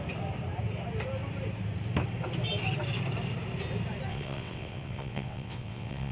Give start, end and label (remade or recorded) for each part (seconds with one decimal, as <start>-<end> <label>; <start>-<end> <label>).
0.0-4.1 recorded; 4.1-6.1 remade

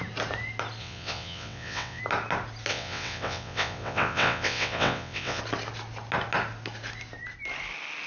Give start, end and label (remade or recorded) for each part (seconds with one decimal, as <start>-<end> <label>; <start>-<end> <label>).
0.0-0.8 recorded; 0.8-2.0 remade; 2.0-2.7 recorded; 2.7-5.4 remade; 5.4-8.1 recorded